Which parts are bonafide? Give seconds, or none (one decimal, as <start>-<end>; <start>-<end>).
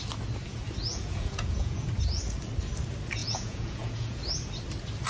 0.0-0.9; 1.9-3.2; 4.2-5.1